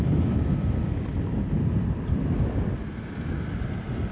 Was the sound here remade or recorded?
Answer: recorded